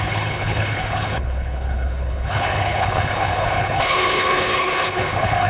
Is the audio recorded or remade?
remade